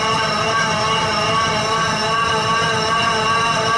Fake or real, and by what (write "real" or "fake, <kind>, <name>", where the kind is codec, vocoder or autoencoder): real